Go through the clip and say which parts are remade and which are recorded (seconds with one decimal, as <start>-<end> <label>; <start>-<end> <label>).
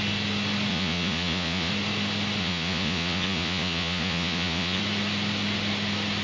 0.0-0.7 recorded; 0.7-1.7 remade; 1.7-2.4 recorded; 2.4-4.8 remade; 4.8-6.2 recorded